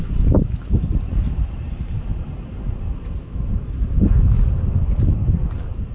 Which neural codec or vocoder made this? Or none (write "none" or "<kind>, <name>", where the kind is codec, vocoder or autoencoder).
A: none